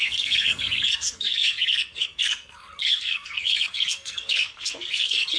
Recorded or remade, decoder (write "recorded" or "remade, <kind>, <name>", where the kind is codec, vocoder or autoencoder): remade, codec, SNAC